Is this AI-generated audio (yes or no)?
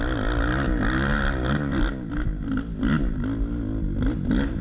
no